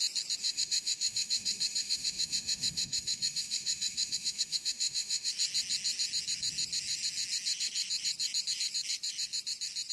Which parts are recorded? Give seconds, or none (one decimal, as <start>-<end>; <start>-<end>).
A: 0.0-0.4; 5.3-9.9